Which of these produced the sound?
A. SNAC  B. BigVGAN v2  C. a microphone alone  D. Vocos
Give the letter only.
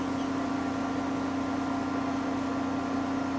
C